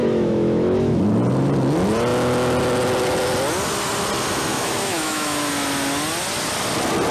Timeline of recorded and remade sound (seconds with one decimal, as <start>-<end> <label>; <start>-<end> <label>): 0.0-1.0 remade; 1.0-4.5 recorded; 4.5-5.5 remade; 5.5-7.1 recorded